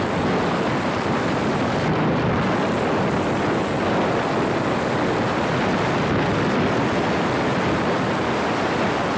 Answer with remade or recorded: remade